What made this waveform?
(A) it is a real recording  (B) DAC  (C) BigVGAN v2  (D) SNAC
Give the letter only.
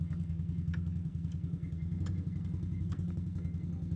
D